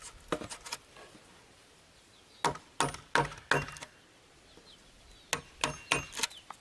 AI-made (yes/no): no